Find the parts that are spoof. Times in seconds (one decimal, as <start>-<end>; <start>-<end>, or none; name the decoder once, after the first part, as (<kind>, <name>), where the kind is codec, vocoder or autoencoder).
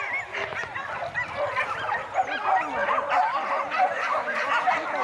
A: 2.8-3.5 (vocoder, BigVGAN v2)